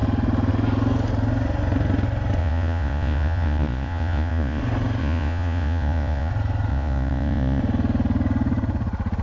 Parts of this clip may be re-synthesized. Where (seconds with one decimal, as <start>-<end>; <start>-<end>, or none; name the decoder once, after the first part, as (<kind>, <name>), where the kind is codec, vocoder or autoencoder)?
2.4-4.6 (vocoder, Vocos); 5.0-6.3; 6.7-7.6